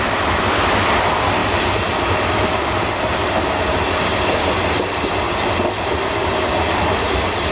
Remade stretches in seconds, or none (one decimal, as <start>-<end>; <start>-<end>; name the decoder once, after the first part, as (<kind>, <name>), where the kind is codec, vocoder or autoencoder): none